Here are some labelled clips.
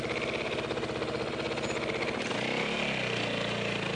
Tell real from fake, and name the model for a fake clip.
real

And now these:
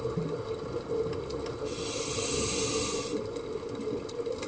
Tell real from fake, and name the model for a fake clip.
real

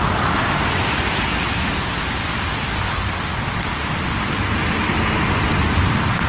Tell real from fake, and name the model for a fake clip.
real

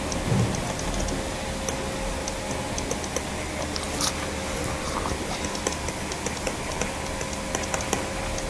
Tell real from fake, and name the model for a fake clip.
real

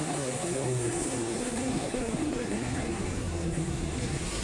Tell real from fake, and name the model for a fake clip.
fake, codec, SNAC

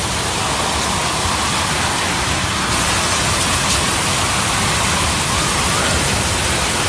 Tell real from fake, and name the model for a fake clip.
real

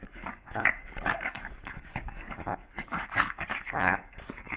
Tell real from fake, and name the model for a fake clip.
fake, codec, DAC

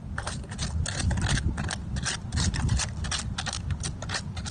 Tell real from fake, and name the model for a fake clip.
real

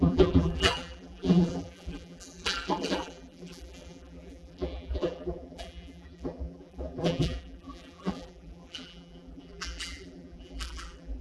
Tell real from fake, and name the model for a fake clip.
fake, vocoder, BigVGAN v2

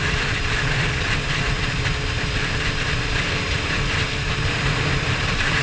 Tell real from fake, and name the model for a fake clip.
fake, vocoder, BigVGAN v2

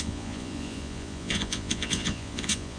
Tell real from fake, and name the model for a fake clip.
fake, vocoder, Vocos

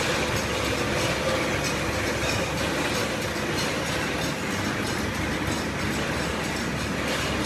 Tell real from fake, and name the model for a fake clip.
real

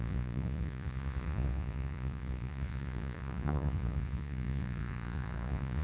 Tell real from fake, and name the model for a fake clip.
fake, vocoder, Vocos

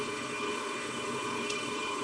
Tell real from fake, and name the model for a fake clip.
fake, codec, HILCodec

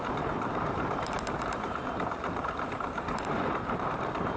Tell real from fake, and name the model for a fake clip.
fake, vocoder, BigVGAN v2